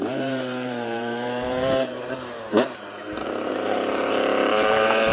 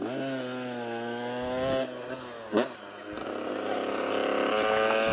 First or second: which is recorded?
second